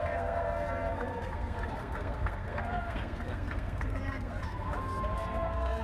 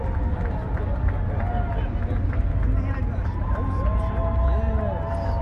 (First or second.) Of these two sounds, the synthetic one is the first